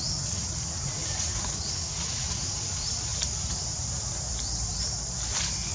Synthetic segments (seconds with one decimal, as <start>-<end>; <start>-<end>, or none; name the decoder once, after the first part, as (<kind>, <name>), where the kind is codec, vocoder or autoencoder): 0.0-3.1 (vocoder, Vocos)